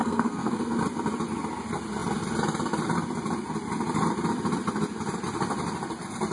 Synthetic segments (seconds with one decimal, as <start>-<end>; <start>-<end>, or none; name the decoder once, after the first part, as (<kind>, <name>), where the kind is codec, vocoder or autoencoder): 0.0-0.6 (codec, SNAC)